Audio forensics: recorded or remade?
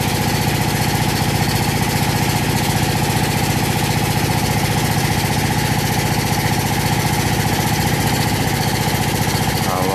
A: recorded